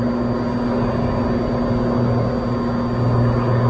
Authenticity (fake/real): real